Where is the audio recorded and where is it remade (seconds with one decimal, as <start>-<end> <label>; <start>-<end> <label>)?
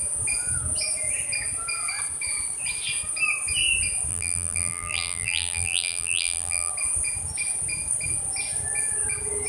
0.0-4.1 recorded; 4.1-6.7 remade; 6.7-9.5 recorded